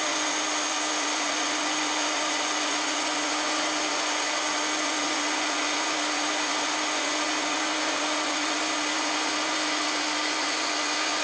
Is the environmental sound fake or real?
fake